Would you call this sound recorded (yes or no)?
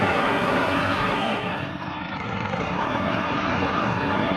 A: no